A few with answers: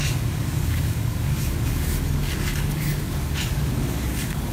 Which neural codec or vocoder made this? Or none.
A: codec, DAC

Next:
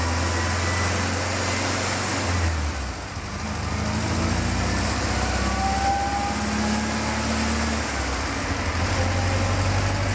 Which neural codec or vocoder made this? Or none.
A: none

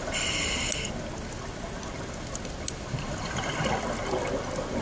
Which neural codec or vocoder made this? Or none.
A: none